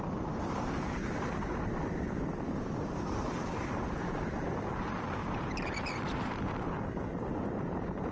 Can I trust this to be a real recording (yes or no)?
no